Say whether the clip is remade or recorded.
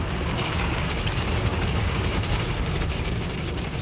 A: remade